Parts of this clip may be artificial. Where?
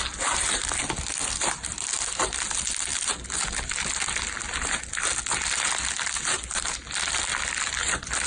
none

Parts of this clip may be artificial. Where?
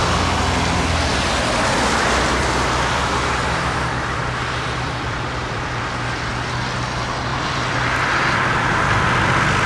1.1-6.3 (vocoder, BigVGAN v2); 7.3-9.1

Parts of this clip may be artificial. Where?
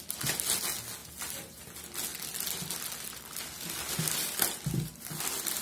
none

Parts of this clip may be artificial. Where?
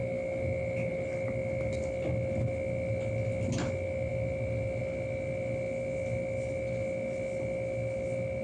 none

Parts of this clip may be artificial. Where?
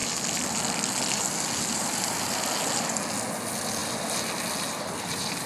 none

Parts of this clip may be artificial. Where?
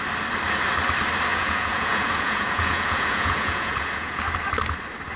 1.3-4.2 (vocoder, Vocos)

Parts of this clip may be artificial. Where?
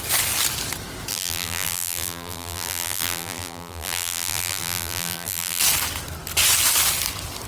1.1-5.6 (vocoder, BigVGAN v2)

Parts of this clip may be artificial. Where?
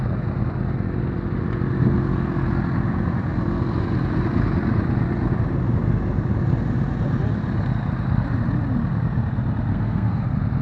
9.7-10.2 (codec, SNAC)